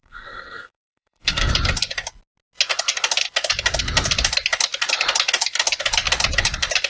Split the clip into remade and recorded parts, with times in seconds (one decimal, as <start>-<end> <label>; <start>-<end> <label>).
0.0-1.5 remade; 1.5-6.9 recorded